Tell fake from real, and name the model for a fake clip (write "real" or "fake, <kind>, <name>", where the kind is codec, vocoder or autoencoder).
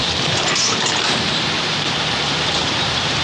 fake, vocoder, BigVGAN v2